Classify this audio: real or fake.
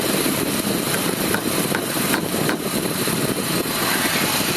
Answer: fake